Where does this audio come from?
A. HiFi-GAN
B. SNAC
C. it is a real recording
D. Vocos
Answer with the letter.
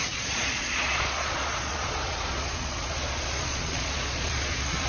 D